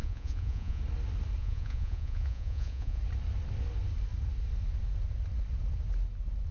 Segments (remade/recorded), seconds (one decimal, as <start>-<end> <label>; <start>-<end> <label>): 0.0-0.8 remade; 0.8-1.4 recorded; 1.4-3.0 remade; 3.0-6.5 recorded